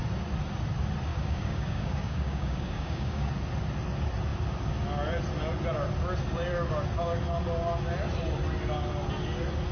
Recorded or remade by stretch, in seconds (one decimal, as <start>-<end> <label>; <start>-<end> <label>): 0.0-1.1 recorded; 1.1-3.3 remade; 3.3-9.7 recorded